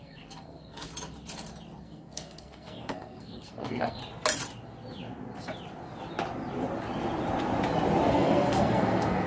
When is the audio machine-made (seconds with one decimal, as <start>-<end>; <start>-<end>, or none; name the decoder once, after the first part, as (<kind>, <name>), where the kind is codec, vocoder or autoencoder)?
0.0-0.9 (codec, SNAC); 1.8-4.0; 8.1-9.3